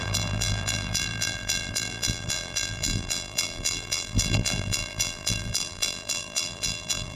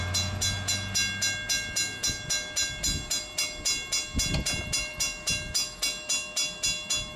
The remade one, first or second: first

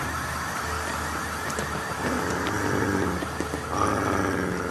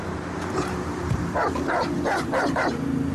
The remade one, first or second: second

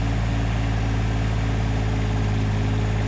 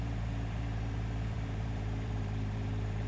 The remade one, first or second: second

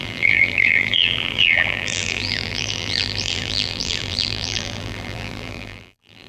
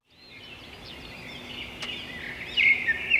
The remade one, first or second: first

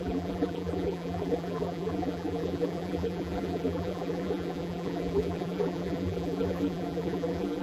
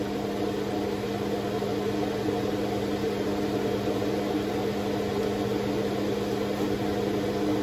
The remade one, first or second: first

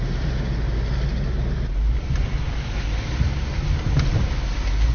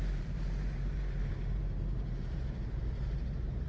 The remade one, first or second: second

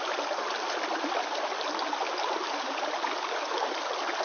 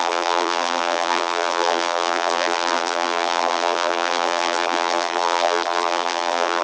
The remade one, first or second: second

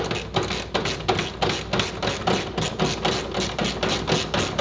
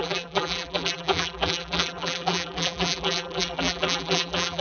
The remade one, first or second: second